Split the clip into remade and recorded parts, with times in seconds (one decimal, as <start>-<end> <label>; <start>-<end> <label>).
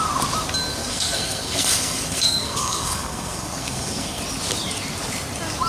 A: 0.0-0.8 recorded; 0.8-4.2 remade; 4.2-5.7 recorded